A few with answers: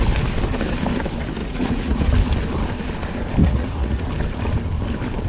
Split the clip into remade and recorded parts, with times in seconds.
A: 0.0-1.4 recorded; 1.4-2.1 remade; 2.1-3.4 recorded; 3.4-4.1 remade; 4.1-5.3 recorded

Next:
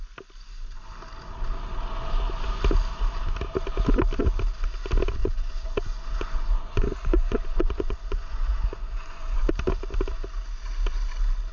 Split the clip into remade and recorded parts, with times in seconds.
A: 0.0-5.2 recorded; 5.2-9.5 remade; 9.5-11.5 recorded